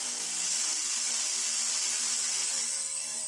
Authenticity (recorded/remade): recorded